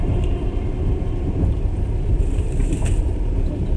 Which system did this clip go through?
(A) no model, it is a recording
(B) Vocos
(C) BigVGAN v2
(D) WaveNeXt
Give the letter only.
C